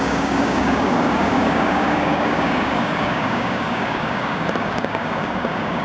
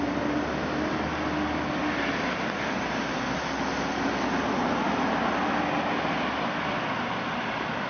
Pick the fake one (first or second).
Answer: first